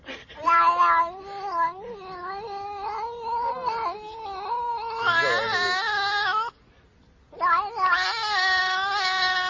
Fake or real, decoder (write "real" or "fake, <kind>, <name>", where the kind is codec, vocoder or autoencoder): real